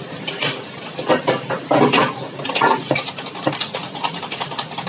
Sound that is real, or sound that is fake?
real